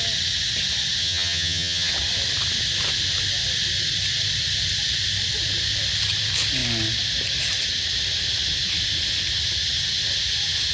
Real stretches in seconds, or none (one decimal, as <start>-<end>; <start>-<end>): 0.0-1.0; 1.9-10.7